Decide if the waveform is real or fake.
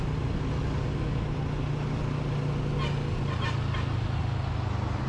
real